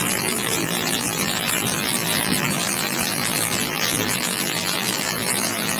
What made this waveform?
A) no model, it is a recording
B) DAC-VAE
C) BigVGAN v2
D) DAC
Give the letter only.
C